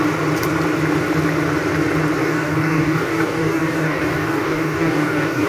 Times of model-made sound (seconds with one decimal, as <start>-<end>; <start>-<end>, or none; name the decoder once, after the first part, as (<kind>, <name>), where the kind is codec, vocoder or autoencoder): 2.2-5.5 (codec, DAC)